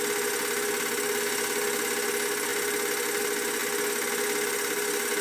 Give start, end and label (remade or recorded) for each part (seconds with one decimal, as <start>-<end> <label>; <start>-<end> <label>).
0.0-5.2 recorded